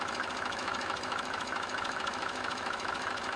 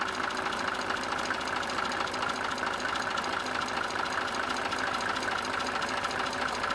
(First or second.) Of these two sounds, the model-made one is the first